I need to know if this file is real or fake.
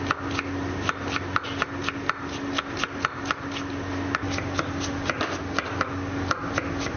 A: real